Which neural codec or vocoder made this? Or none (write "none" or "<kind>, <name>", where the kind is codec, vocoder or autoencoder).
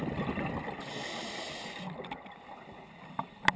none